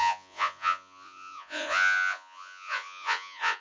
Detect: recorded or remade remade